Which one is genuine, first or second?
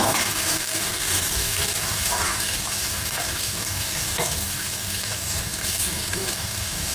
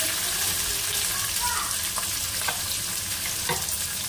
second